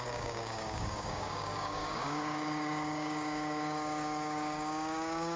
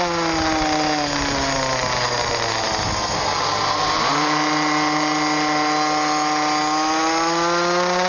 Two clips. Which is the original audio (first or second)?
second